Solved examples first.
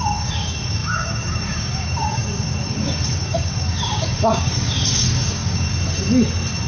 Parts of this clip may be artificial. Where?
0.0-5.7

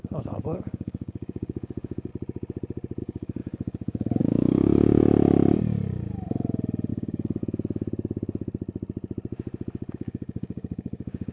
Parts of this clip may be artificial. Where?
0.0-2.1; 3.0-5.0; 6.9-7.4; 9.9-11.3

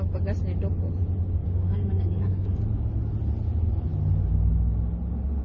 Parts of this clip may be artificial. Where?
1.4-2.6

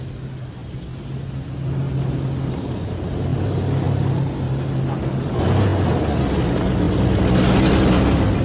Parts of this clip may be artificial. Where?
none

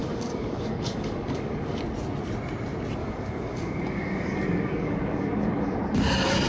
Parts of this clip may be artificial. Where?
0.0-1.8; 3.0-5.8

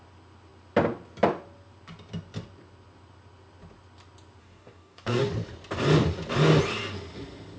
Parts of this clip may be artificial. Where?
4.4-5.3

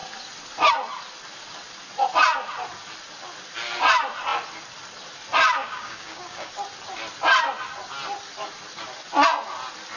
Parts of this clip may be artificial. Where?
5.6-6.5

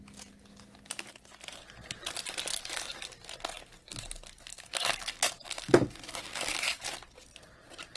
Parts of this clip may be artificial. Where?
0.5-1.1; 2.5-3.0; 4.5-6.9